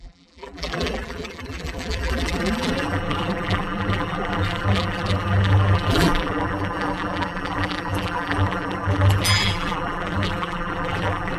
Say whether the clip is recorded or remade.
remade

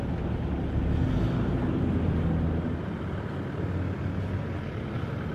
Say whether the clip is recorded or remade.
recorded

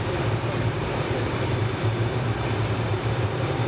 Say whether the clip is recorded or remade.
remade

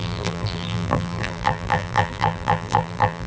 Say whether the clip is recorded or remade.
remade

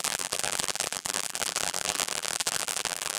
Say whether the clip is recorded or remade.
remade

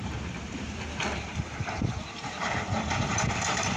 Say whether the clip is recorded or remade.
remade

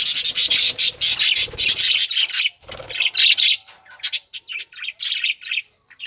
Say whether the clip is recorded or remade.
recorded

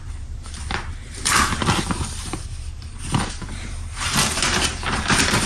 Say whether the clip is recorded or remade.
remade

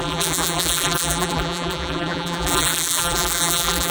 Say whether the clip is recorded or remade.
remade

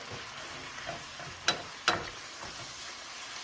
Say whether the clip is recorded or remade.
recorded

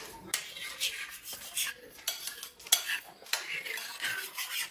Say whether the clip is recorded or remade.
recorded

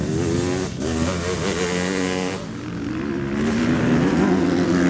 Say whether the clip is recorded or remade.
recorded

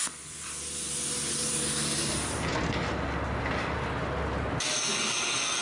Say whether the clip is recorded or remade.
recorded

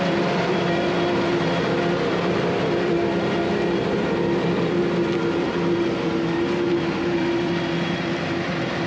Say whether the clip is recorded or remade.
remade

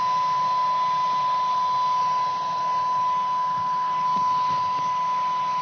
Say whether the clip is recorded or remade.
recorded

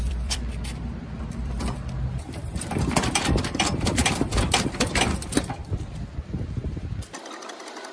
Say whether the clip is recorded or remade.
remade